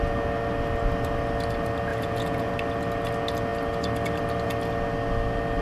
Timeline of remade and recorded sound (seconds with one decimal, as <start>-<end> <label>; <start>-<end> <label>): 0.0-1.9 recorded; 1.9-2.5 remade; 2.5-5.6 recorded